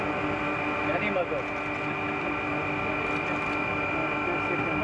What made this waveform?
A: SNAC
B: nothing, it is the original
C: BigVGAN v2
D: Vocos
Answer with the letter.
B